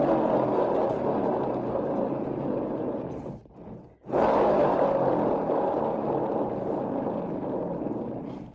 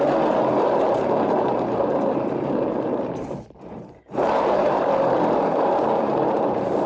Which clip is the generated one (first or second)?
second